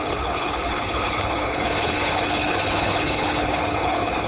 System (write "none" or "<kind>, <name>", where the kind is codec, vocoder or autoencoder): codec, HILCodec